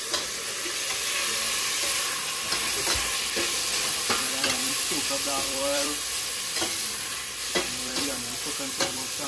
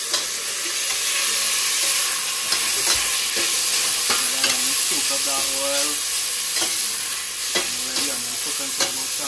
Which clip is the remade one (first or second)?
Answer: first